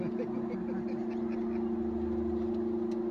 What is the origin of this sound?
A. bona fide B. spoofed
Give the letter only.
A